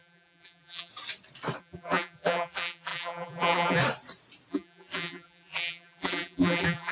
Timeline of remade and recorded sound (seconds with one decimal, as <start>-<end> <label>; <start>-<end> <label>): 0.0-0.9 remade; 0.9-1.6 recorded; 1.6-3.8 remade; 3.8-4.5 recorded; 4.5-6.9 remade